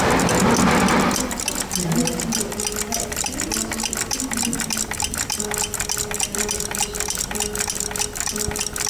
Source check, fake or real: real